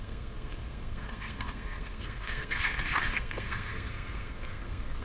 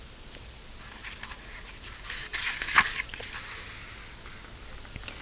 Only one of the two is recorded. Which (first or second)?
second